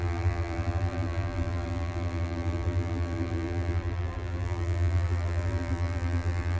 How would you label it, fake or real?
fake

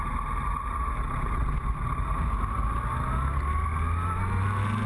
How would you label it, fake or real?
real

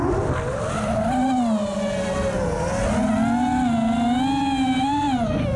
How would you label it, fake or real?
real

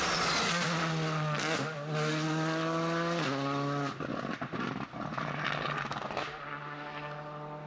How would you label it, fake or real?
real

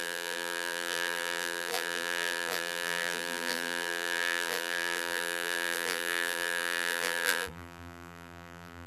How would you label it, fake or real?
fake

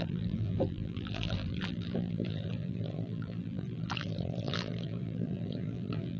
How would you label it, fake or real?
fake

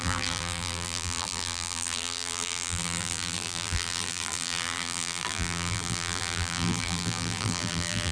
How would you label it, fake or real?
fake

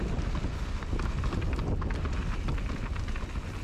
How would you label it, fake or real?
real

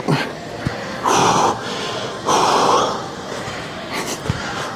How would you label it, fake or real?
real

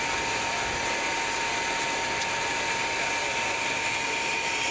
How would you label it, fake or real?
real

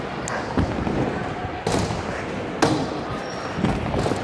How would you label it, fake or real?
real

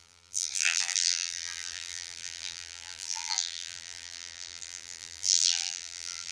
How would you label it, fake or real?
fake